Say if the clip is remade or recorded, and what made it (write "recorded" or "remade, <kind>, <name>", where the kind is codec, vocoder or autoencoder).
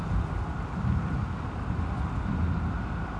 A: recorded